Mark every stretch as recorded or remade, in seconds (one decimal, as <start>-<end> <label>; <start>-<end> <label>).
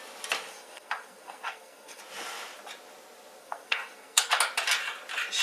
0.0-0.5 recorded; 0.5-2.0 remade; 2.0-3.4 recorded; 3.4-4.4 remade; 4.4-5.4 recorded